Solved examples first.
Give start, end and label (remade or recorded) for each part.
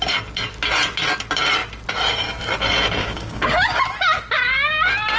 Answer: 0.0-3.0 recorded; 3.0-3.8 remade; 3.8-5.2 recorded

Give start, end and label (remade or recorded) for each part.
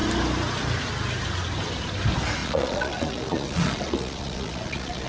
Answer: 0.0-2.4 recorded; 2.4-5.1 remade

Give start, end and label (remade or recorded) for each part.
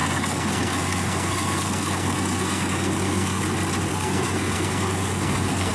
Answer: 0.0-3.4 remade; 3.4-3.9 recorded; 3.9-5.7 remade